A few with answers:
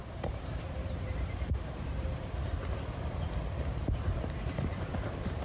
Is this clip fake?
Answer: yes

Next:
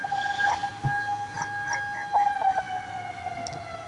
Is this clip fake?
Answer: no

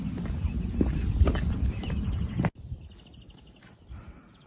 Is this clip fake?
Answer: no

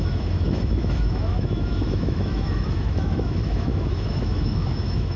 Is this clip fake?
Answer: yes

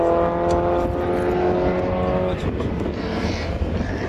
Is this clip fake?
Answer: no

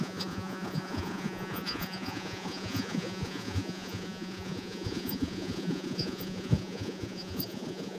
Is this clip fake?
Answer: yes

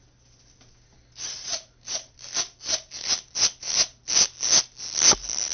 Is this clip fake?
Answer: no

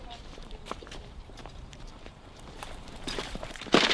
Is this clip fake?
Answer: yes